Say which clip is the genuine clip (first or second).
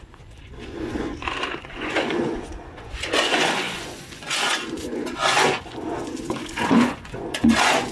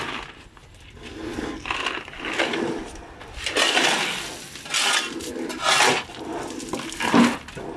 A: second